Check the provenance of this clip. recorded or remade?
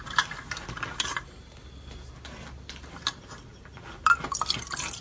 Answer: recorded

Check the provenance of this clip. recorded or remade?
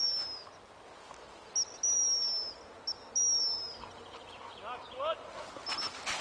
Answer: recorded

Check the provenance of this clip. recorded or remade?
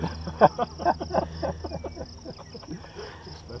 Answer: recorded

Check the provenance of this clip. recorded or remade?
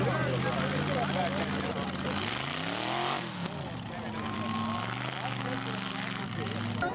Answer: recorded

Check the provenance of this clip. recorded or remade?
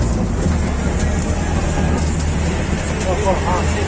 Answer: recorded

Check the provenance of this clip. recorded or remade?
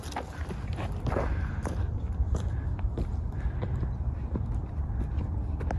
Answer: recorded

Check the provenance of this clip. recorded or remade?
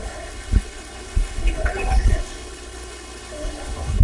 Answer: remade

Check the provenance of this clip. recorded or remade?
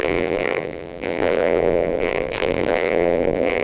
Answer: remade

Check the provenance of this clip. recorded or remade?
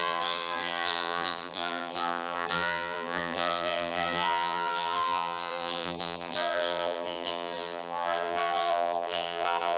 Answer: remade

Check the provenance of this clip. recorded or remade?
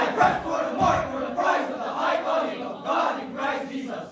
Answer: remade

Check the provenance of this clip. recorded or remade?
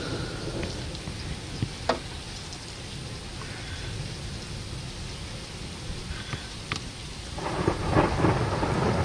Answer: recorded